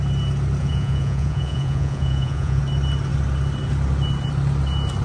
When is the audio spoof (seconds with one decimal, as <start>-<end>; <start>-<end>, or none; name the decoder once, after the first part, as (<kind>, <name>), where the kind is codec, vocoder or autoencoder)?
0.6-2.6 (vocoder, Vocos)